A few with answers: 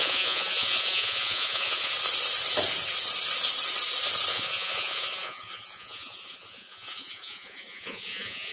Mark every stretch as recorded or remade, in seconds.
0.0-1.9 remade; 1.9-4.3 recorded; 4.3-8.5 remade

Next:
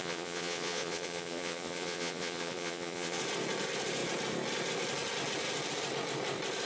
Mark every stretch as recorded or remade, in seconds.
0.0-3.2 remade; 3.2-6.7 recorded